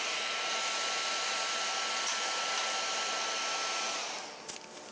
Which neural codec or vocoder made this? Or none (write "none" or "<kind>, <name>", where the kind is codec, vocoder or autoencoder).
none